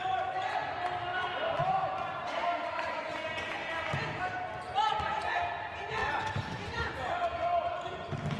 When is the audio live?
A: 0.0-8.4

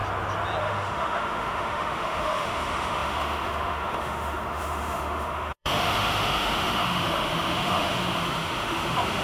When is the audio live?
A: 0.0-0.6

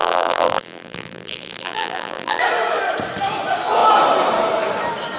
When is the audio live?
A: 2.4-5.2

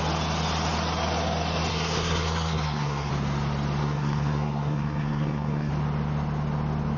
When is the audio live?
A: 0.0-1.7; 3.1-3.8; 5.7-7.0